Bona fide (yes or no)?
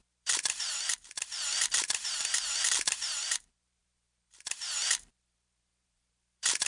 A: no